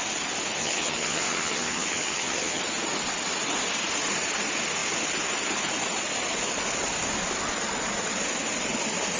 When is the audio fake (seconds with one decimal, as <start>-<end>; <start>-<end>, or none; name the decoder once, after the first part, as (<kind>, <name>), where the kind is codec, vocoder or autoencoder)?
0.6-2.6 (vocoder, HiFi-GAN)